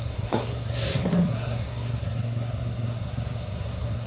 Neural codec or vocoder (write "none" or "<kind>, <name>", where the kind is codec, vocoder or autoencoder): codec, SNAC